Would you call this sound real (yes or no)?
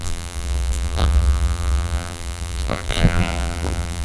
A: no